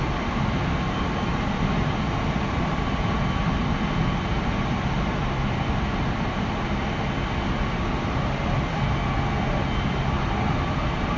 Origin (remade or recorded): recorded